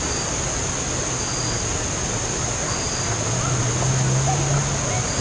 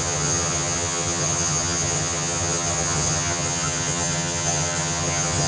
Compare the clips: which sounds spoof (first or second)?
second